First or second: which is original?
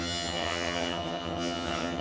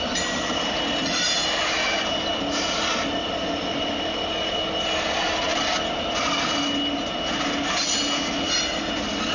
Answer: second